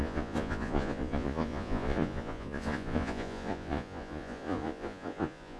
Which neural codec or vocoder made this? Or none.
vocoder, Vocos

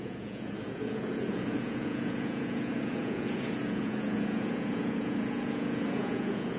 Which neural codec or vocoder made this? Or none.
vocoder, Vocos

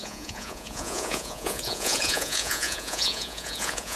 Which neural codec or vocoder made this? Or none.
vocoder, Vocos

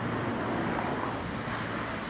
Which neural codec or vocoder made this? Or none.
none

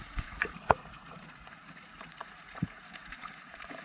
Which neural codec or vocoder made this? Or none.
vocoder, Vocos